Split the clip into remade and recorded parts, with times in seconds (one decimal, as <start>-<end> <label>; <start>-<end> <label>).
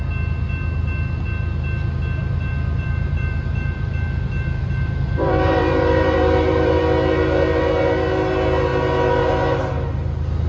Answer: 0.0-2.2 recorded; 2.2-6.8 remade; 6.8-10.5 recorded